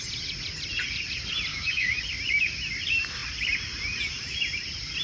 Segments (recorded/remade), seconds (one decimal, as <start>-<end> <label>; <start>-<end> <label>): 0.0-1.5 recorded; 1.5-2.0 remade; 2.0-5.0 recorded